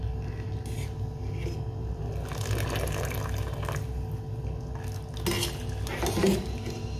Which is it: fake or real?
real